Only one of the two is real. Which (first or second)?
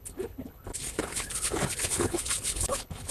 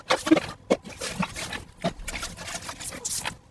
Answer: second